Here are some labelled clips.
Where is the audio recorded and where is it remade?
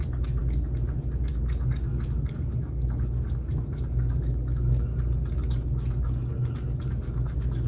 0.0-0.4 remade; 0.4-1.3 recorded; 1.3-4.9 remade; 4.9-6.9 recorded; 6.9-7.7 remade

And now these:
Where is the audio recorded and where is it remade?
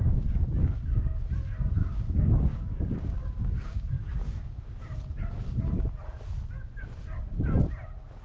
0.0-0.6 recorded; 0.6-1.2 remade; 1.2-1.8 recorded; 1.8-5.0 remade; 5.0-8.2 recorded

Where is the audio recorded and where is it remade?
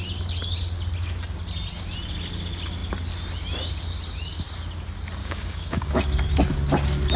0.0-5.2 recorded; 5.2-5.9 remade; 5.9-7.2 recorded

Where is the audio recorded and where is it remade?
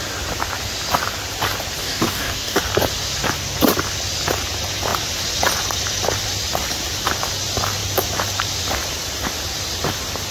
0.0-1.8 recorded; 1.8-2.6 remade; 2.6-10.3 recorded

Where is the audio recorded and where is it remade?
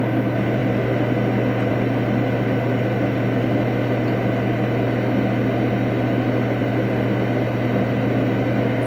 0.0-8.9 recorded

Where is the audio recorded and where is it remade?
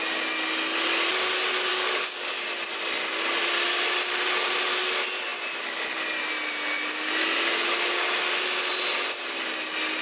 0.0-1.7 recorded; 1.7-2.4 remade; 2.4-10.0 recorded